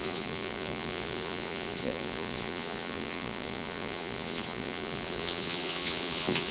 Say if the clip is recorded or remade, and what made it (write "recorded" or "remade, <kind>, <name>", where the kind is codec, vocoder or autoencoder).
remade, vocoder, Vocos